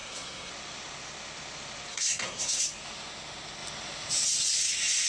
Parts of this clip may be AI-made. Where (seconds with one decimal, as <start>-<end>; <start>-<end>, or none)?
0.0-0.5; 1.9-2.6